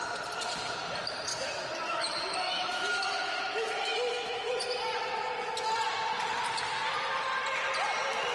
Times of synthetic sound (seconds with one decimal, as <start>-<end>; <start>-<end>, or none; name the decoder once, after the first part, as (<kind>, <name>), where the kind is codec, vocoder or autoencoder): 1.3-4.5 (autoencoder, DAC-VAE)